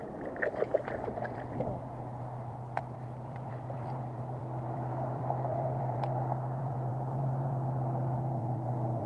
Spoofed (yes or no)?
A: yes